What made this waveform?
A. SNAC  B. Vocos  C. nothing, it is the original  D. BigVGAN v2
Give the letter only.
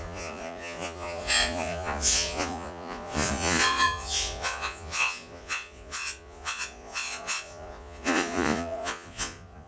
B